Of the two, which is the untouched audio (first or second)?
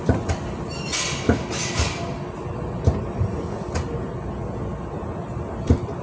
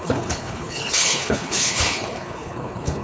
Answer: first